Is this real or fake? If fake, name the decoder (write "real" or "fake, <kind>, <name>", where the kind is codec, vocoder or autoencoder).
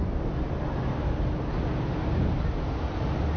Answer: real